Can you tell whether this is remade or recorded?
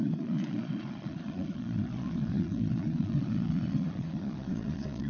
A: remade